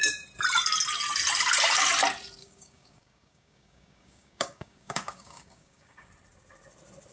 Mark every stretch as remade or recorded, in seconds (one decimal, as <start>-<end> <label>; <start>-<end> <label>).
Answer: 0.0-2.4 recorded; 2.4-6.1 remade; 6.1-7.1 recorded